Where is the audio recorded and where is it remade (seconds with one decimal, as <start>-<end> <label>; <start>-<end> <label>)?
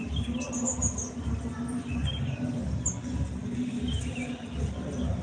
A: 0.0-5.2 recorded